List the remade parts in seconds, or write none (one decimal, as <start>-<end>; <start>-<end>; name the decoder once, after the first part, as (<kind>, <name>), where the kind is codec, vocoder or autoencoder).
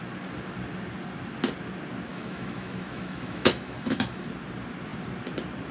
2.1-4.3 (autoencoder, DAC-VAE)